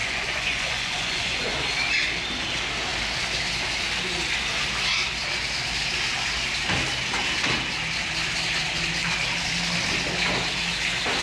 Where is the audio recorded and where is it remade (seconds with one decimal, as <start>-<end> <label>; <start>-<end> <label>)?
0.0-1.7 remade; 1.7-11.2 recorded